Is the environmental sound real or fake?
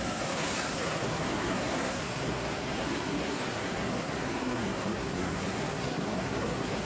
fake